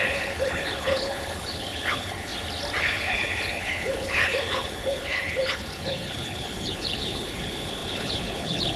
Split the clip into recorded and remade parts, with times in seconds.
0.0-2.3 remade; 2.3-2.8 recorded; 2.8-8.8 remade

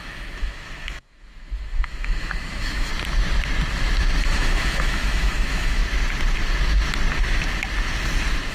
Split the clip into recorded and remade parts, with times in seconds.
0.0-2.9 remade; 2.9-4.2 recorded; 4.2-5.8 remade; 5.8-8.5 recorded

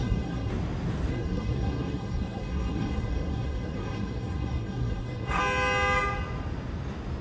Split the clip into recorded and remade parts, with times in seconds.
0.0-0.5 remade; 0.5-1.1 recorded; 1.1-5.4 remade; 5.4-7.2 recorded